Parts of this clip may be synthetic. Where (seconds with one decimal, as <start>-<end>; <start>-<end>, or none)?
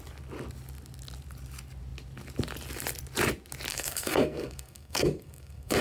3.7-5.8